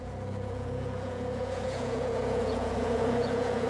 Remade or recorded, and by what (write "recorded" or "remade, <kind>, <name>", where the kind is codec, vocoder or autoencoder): remade, vocoder, Vocos